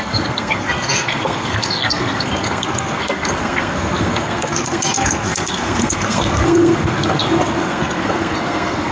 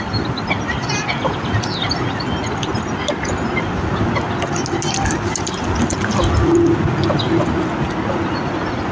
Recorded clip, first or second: second